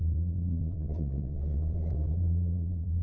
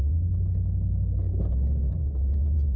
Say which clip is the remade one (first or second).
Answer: first